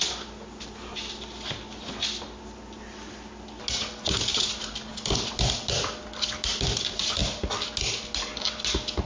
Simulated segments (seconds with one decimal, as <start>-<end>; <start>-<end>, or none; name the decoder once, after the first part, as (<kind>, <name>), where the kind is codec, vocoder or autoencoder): none